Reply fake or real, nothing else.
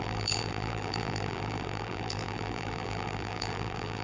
fake